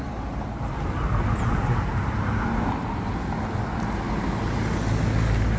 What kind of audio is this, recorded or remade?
recorded